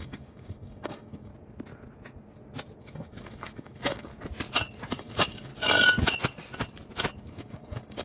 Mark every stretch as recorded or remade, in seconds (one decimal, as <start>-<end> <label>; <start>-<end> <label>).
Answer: 0.0-1.3 remade; 1.3-2.8 recorded; 2.8-4.1 remade; 4.1-5.0 recorded; 5.0-5.5 remade; 5.5-7.2 recorded; 7.2-8.0 remade